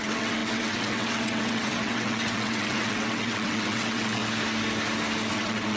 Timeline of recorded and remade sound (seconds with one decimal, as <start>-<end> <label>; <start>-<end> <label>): 0.0-4.2 remade; 4.2-5.3 recorded; 5.3-5.8 remade